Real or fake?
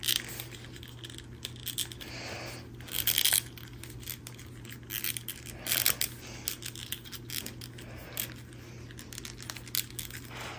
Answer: real